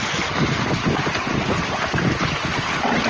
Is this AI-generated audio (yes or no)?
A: no